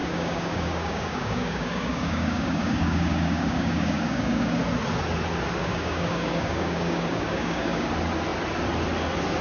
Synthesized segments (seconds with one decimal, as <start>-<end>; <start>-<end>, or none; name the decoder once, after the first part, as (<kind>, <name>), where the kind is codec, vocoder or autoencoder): 0.0-4.6 (codec, DAC); 5.6-7.9